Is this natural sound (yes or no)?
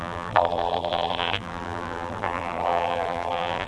no